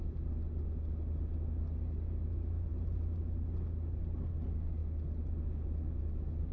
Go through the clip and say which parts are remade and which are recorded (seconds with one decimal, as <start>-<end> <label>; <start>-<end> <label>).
0.0-6.5 recorded